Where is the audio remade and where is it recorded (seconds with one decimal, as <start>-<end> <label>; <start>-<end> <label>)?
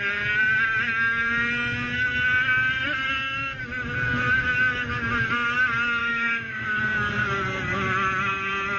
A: 0.0-6.0 recorded; 6.0-6.8 remade; 6.8-8.8 recorded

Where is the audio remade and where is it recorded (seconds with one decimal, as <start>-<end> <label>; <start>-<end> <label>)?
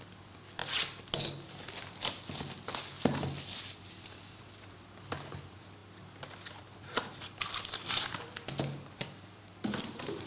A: 0.0-10.3 recorded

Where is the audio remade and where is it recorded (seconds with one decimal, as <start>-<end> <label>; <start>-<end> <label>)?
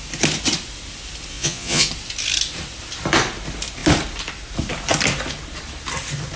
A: 0.0-1.3 recorded; 1.3-1.9 remade; 1.9-6.4 recorded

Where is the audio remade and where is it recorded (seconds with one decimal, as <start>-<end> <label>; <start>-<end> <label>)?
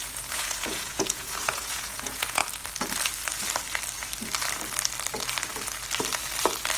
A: 0.0-2.4 remade; 2.4-6.8 recorded